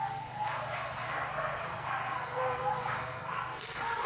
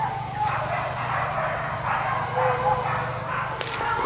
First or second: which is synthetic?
first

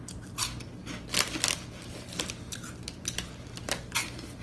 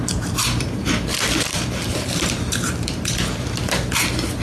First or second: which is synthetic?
second